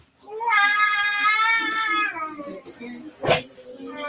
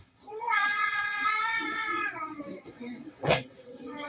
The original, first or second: first